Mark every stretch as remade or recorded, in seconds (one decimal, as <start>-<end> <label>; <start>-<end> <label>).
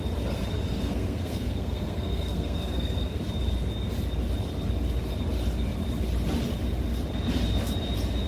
0.0-0.7 recorded; 0.7-3.2 remade; 3.2-8.3 recorded